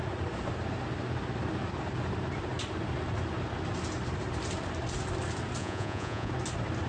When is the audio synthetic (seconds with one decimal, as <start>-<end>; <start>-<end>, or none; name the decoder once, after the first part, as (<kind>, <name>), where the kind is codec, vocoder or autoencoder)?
5.6-6.3 (vocoder, Vocos)